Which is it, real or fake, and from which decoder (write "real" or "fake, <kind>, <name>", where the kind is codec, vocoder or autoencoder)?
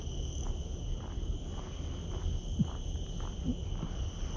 real